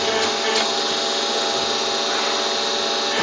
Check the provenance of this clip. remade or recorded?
recorded